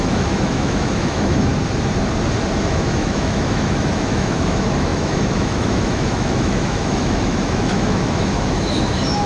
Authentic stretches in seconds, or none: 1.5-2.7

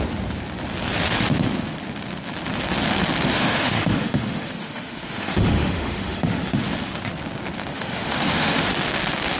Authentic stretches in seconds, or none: 0.0-3.3; 6.6-7.7; 8.7-9.4

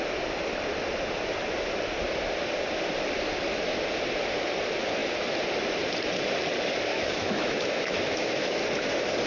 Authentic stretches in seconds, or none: 0.0-6.9; 8.6-9.3